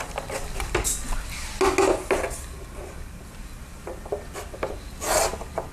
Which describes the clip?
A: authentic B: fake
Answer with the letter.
A